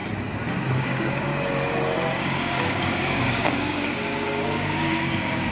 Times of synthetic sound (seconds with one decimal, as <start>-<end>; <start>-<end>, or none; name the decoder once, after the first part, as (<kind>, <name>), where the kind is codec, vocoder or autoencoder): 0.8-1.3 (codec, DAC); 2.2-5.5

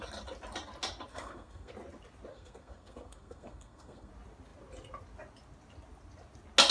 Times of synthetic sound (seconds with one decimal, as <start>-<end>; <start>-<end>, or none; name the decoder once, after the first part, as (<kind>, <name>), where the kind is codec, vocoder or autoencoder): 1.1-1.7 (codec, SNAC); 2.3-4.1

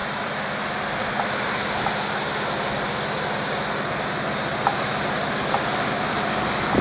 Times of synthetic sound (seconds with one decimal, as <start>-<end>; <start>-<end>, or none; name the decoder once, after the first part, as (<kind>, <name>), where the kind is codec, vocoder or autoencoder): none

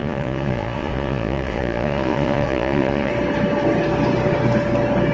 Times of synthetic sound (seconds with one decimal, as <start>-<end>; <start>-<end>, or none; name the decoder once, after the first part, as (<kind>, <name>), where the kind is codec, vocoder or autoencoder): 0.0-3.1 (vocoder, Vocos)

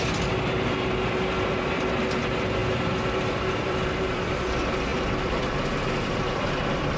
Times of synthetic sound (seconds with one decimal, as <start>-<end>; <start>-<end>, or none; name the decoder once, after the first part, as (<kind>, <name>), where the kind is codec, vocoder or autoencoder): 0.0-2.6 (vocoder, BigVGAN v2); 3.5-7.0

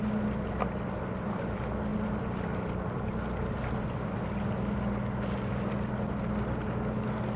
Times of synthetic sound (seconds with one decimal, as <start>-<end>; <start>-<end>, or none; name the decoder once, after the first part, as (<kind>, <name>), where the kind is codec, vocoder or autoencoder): none

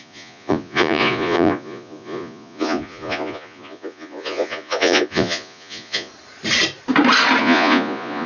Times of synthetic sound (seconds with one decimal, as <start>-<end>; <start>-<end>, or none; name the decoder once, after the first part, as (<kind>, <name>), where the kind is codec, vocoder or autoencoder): 0.0-6.1 (vocoder, Vocos); 7.4-8.3